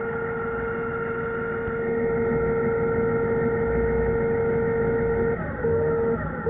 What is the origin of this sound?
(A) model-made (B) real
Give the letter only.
B